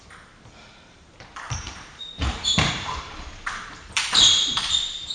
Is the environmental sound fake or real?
fake